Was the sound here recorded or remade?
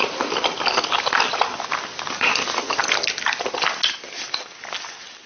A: recorded